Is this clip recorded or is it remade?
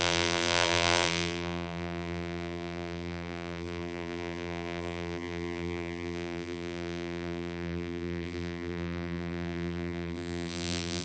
remade